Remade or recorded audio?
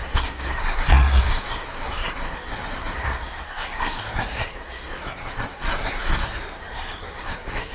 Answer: remade